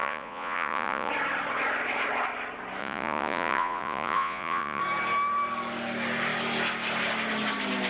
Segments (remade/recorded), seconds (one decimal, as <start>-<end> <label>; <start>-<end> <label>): 0.0-1.1 remade; 1.1-2.8 recorded; 2.8-4.8 remade; 4.8-7.9 recorded